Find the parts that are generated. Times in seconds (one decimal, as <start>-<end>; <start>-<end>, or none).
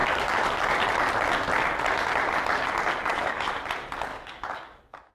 0.0-0.7; 3.1-3.6; 4.1-5.1